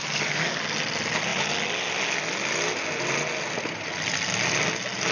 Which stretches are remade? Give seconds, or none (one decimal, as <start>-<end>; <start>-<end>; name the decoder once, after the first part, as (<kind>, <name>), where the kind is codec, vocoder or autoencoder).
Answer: 0.0-0.6 (codec, DAC)